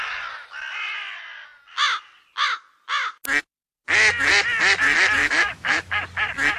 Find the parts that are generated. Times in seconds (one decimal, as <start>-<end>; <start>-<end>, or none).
5.2-6.0